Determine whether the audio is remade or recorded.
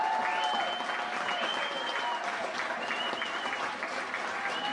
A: recorded